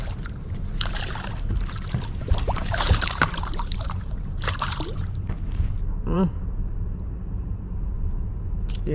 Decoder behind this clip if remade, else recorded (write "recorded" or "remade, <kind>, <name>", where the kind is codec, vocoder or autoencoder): remade, vocoder, BigVGAN v2